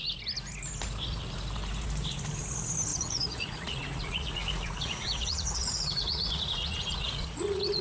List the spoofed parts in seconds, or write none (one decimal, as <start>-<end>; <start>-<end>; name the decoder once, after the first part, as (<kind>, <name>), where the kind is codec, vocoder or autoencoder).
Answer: 2.9-7.8 (vocoder, Vocos)